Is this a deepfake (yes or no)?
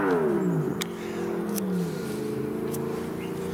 no